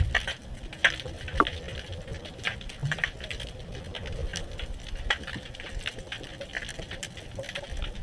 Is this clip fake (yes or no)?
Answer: no